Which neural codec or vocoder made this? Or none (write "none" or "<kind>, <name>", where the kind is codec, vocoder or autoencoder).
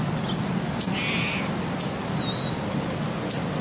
none